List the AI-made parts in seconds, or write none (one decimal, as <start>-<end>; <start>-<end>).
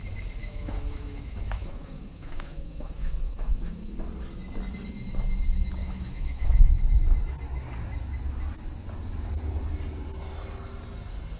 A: 0.4-3.9; 5.8-6.8